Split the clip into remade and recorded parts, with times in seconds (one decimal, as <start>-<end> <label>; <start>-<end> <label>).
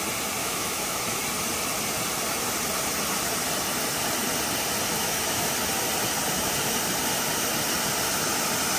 0.0-0.4 recorded; 0.4-1.2 remade; 1.2-4.9 recorded; 4.9-5.5 remade; 5.5-8.8 recorded